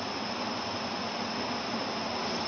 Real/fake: real